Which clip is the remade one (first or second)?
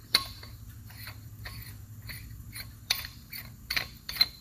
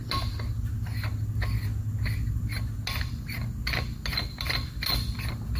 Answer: first